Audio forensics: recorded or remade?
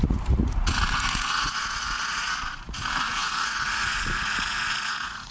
remade